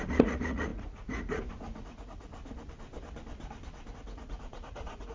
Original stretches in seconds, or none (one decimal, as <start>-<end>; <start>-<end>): 2.3-3.9

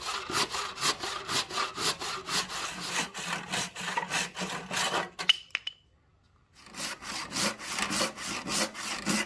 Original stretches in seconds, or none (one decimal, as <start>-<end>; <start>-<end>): 0.0-9.3